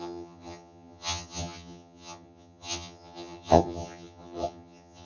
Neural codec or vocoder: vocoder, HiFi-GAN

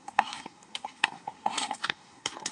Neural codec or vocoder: codec, SNAC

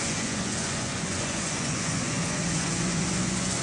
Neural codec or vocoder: vocoder, Vocos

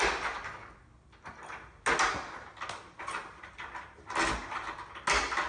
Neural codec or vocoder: none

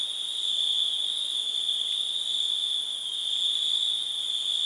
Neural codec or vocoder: none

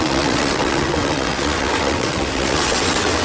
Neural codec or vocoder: vocoder, WaveNeXt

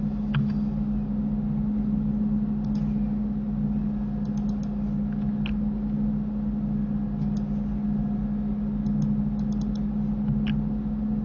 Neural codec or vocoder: none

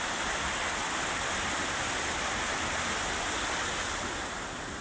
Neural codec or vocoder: none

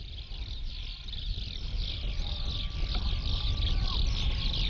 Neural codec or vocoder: none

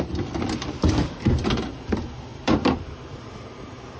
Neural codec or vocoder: vocoder, BigVGAN v2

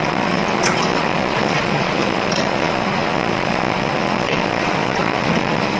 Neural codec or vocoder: vocoder, Vocos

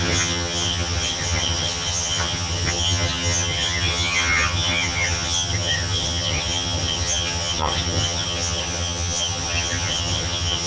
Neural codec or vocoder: vocoder, HiFi-GAN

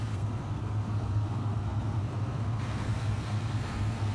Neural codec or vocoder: codec, SNAC